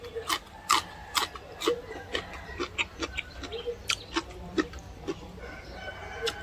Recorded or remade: recorded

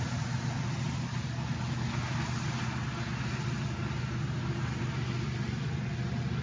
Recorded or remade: recorded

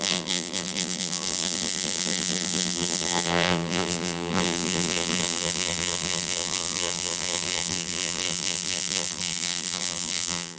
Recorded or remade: remade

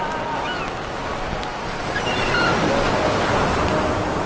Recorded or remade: recorded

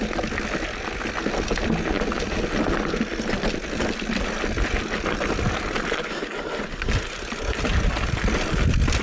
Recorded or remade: recorded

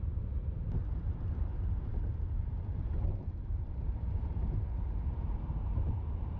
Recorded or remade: remade